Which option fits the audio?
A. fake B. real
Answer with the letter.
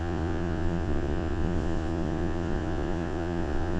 A